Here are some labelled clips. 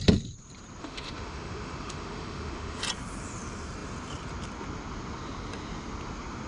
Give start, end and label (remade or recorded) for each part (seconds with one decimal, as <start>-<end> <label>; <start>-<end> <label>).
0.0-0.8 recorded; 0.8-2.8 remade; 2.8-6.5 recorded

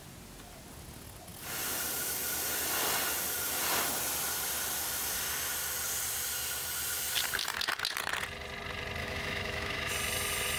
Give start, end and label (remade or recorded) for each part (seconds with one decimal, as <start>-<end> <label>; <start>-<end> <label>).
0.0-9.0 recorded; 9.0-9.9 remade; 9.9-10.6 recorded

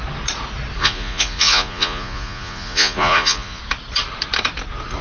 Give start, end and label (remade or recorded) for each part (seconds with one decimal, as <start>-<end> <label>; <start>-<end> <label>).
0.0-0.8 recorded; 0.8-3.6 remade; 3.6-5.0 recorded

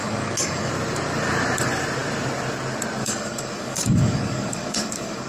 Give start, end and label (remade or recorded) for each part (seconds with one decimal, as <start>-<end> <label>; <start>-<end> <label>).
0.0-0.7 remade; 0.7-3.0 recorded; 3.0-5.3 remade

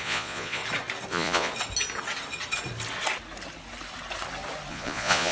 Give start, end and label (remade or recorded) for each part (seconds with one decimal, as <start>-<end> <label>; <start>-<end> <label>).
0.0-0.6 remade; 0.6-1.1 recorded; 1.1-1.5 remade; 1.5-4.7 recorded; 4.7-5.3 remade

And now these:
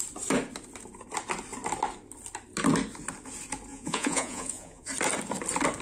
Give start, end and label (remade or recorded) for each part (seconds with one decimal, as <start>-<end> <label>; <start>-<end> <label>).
0.0-3.7 recorded; 3.7-4.9 remade; 4.9-5.8 recorded

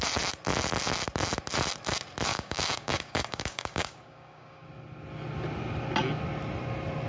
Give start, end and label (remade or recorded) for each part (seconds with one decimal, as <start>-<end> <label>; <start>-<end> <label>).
0.0-2.3 recorded; 2.3-4.7 remade; 4.7-7.1 recorded

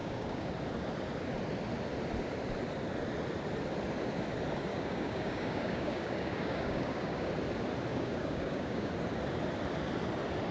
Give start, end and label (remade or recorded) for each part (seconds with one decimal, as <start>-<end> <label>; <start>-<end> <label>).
0.0-0.5 remade; 0.5-4.7 recorded; 4.7-7.3 remade; 7.3-7.9 recorded; 7.9-8.9 remade; 8.9-10.5 recorded